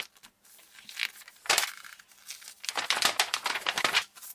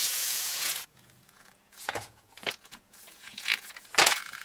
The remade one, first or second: second